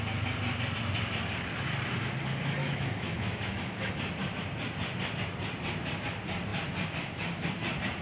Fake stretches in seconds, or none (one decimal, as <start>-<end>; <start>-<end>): 2.6-3.9